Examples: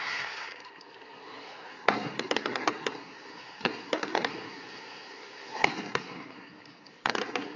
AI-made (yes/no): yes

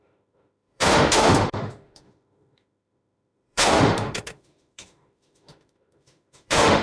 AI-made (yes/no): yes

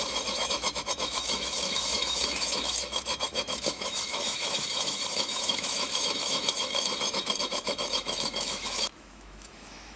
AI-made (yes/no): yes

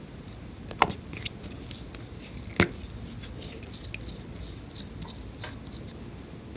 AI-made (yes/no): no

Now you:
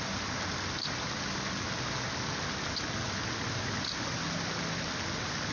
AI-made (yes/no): no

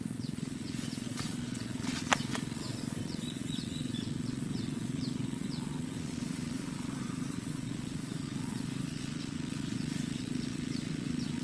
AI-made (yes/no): yes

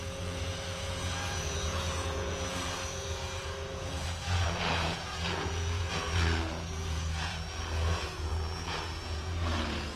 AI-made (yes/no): yes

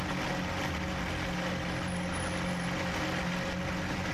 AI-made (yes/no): no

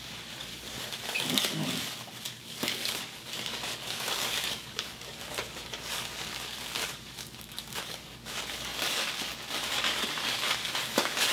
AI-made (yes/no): yes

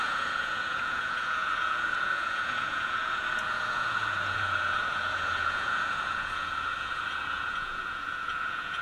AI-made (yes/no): yes